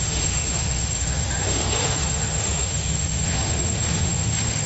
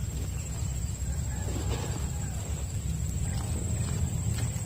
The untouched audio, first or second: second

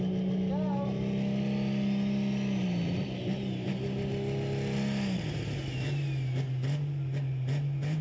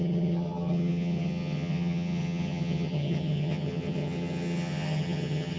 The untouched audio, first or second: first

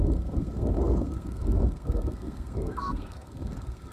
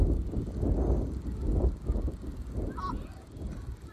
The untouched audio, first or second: second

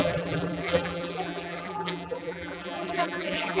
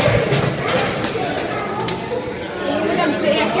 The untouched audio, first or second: second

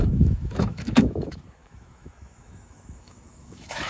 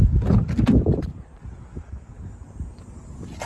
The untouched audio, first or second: second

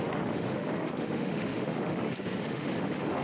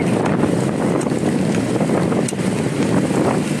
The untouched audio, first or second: second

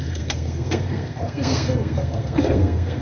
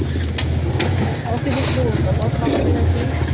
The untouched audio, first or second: second